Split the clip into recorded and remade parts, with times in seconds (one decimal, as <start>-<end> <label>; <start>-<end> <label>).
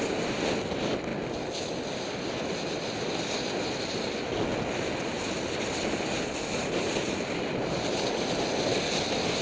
0.0-9.4 recorded